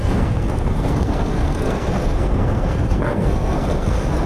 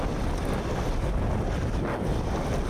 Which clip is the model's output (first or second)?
first